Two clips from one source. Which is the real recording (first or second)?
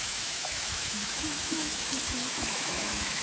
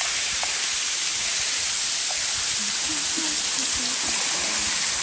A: second